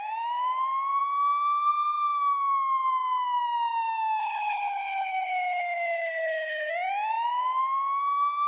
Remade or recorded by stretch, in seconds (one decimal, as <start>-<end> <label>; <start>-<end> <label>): 0.0-4.2 recorded; 4.2-6.7 remade; 6.7-8.5 recorded